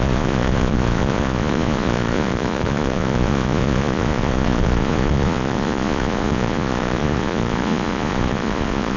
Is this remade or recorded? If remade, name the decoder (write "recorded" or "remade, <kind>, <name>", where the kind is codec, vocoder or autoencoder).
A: remade, vocoder, Vocos